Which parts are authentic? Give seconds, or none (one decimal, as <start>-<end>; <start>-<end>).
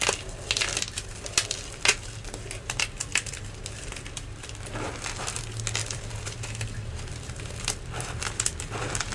0.0-5.8; 6.6-9.1